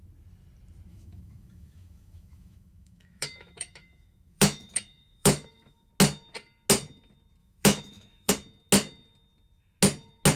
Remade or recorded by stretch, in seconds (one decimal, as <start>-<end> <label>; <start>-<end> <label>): 0.0-0.9 recorded; 0.9-5.9 remade; 5.9-7.4 recorded; 7.4-8.3 remade; 8.3-10.4 recorded